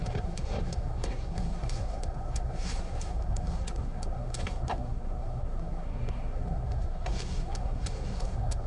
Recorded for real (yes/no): no